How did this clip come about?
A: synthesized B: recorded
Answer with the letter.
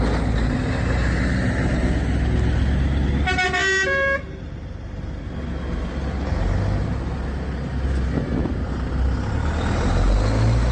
B